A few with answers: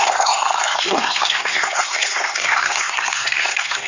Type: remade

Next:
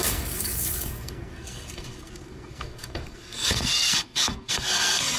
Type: remade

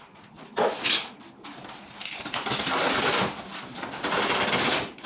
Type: recorded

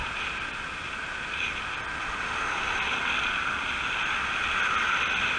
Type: recorded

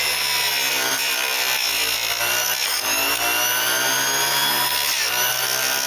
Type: recorded